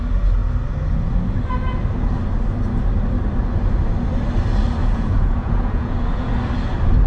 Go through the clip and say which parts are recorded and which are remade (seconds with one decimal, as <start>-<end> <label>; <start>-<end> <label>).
0.0-4.8 recorded; 4.8-6.3 remade; 6.3-7.1 recorded